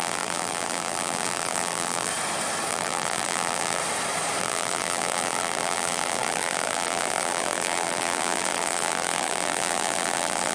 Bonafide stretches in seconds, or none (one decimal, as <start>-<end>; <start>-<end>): 2.1-2.7; 3.8-4.4